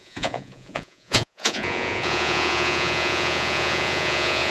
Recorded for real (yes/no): no